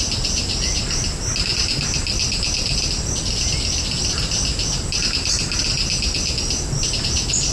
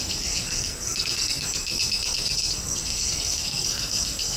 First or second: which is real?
first